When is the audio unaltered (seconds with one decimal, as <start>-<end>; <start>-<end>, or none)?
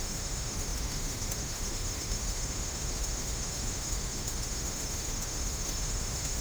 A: none